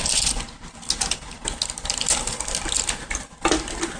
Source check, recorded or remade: recorded